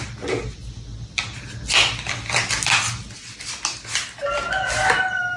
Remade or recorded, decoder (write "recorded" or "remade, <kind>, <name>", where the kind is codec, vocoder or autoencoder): recorded